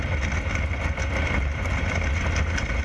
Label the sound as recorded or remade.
recorded